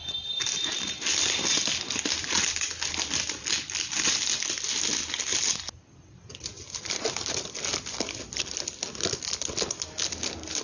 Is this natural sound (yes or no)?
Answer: yes